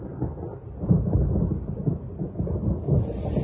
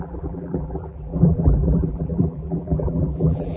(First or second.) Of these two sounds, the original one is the first